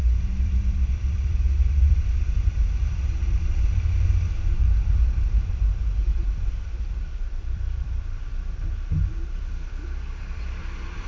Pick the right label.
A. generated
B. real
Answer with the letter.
A